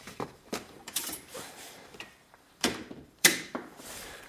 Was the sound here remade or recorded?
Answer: remade